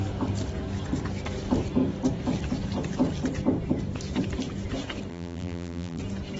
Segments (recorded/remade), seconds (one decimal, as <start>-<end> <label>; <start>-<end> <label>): 0.0-5.1 recorded; 5.1-6.0 remade; 6.0-6.4 recorded